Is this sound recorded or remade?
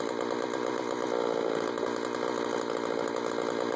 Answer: recorded